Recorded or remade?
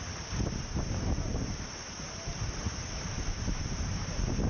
remade